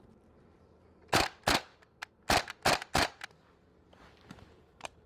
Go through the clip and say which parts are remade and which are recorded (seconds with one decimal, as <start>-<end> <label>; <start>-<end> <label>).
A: 0.0-1.7 remade; 1.7-4.1 recorded; 4.1-5.1 remade